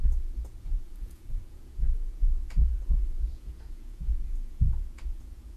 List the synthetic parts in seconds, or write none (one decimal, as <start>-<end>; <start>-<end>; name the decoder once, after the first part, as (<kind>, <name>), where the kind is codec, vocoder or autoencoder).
0.0-5.6 (vocoder, Vocos)